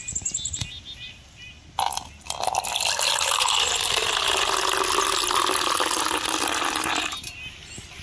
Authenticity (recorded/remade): recorded